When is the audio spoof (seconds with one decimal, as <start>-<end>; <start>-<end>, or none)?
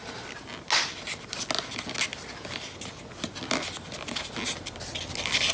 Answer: none